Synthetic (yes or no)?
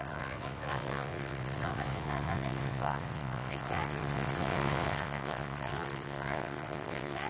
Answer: yes